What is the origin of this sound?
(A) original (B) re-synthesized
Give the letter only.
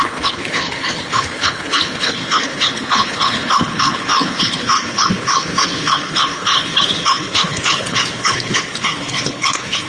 B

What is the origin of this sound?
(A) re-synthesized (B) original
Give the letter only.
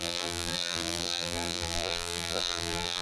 A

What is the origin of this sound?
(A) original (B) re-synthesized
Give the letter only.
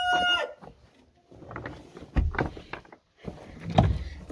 A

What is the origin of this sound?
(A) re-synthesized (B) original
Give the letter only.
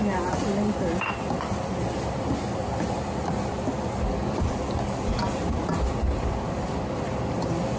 B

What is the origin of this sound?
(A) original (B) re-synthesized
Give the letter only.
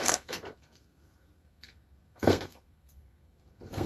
B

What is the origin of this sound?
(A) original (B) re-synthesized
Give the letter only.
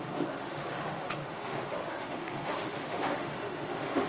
B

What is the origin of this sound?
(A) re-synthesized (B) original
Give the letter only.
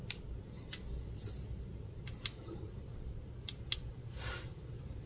B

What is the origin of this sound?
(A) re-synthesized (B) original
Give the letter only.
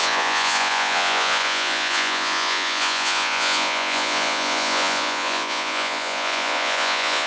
A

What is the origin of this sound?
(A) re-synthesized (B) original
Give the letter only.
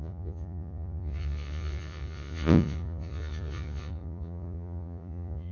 A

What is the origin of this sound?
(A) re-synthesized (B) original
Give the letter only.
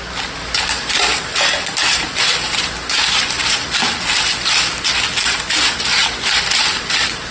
B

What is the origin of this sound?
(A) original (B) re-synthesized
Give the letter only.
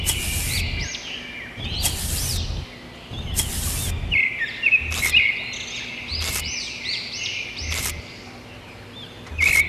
A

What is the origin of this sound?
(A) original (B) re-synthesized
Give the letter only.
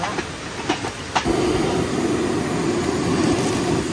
A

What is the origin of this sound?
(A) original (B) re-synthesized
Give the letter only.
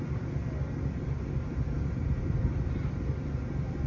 A